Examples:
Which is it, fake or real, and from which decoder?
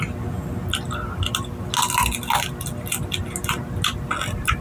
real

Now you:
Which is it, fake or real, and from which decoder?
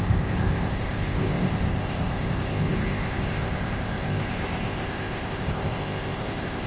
fake, codec, ZipCodec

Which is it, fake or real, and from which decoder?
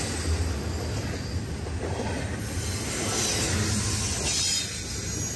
real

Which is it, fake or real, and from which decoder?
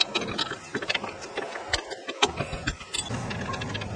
real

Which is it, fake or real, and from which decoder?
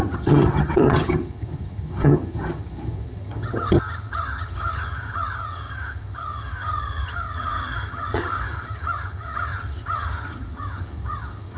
fake, vocoder, HiFi-GAN